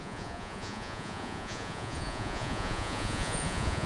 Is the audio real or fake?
fake